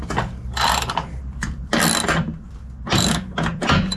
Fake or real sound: real